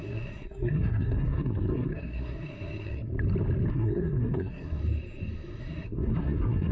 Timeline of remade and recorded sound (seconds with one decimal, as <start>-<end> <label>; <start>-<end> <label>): 0.0-3.1 remade; 3.1-3.7 recorded; 3.7-4.8 remade; 4.8-5.6 recorded; 5.6-6.7 remade